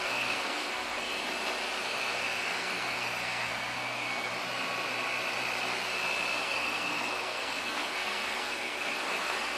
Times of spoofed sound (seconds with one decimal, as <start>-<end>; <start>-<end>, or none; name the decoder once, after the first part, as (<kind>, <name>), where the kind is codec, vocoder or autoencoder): 0.0-1.2 (codec, SNAC); 1.8-4.3; 6.4-9.6